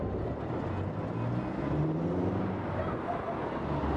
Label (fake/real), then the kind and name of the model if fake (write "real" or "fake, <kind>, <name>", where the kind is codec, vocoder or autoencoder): real